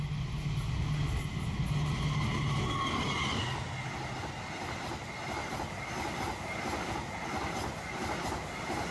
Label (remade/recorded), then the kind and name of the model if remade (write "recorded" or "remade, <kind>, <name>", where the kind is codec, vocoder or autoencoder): recorded